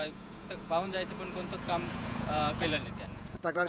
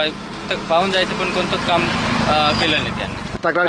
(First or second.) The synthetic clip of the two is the first